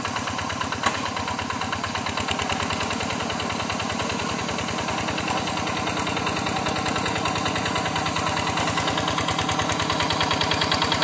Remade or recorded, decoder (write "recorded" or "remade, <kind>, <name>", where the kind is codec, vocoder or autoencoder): recorded